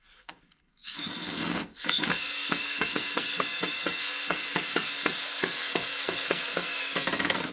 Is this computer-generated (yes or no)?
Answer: yes